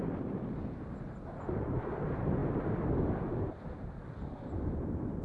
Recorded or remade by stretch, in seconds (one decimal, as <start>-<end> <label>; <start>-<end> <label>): 0.0-5.2 recorded